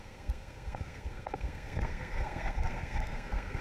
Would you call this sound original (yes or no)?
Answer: no